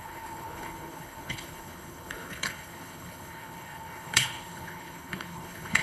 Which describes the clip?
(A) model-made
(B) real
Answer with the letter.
A